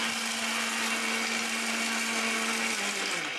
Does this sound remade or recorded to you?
recorded